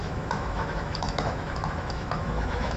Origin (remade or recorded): remade